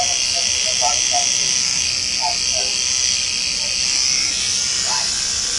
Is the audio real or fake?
real